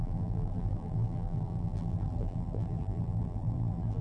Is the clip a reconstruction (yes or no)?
yes